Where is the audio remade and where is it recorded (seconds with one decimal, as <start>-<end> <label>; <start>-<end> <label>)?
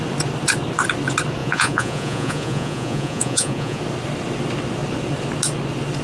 0.0-1.4 recorded; 1.4-3.8 remade; 3.8-6.0 recorded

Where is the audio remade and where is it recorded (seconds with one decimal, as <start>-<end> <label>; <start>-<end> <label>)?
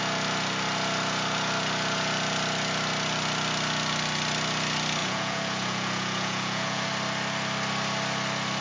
0.0-5.0 recorded; 5.0-6.9 remade; 6.9-8.6 recorded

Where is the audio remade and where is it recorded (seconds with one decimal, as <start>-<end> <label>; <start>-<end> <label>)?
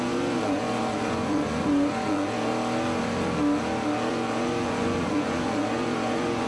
0.0-2.5 remade; 2.5-4.1 recorded; 4.1-6.5 remade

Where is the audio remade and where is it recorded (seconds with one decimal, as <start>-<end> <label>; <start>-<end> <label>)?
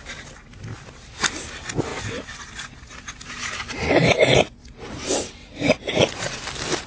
0.0-5.4 recorded; 5.4-6.4 remade; 6.4-6.9 recorded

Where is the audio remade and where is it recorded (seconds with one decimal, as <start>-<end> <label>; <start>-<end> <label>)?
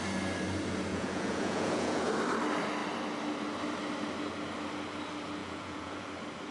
0.0-0.9 recorded; 0.9-2.1 remade; 2.1-5.4 recorded; 5.4-6.1 remade; 6.1-6.5 recorded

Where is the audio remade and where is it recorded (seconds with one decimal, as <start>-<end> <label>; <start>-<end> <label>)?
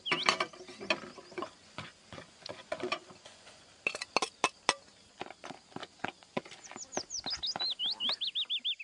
0.0-1.3 recorded; 1.3-3.7 remade; 3.7-5.8 recorded; 5.8-6.4 remade; 6.4-8.8 recorded